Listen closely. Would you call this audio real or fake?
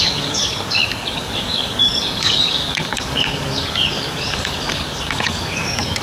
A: fake